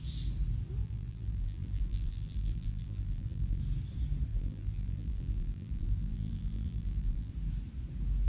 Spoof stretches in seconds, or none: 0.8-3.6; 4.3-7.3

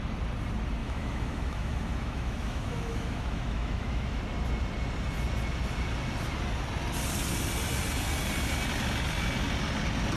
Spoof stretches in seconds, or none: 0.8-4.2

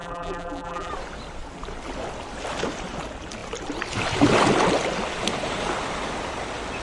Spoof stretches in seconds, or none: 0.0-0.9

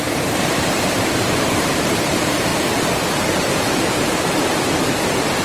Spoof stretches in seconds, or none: 0.0-2.5; 3.5-5.4

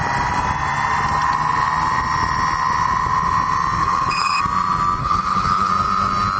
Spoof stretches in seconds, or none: 3.8-4.4; 5.0-5.7